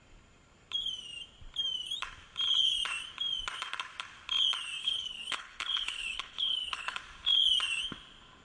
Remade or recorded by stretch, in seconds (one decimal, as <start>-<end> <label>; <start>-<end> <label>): 0.0-4.8 recorded; 4.8-7.0 remade; 7.0-8.4 recorded